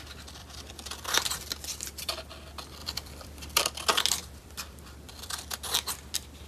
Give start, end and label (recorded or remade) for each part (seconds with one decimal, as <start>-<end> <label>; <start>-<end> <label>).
0.0-0.4 recorded; 0.4-2.1 remade; 2.1-2.8 recorded; 2.8-3.6 remade; 3.6-4.2 recorded; 4.2-5.3 remade; 5.3-6.5 recorded